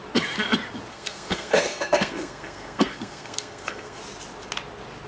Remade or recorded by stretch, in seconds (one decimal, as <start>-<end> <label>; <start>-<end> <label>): 0.0-0.9 recorded; 0.9-4.0 remade; 4.0-5.1 recorded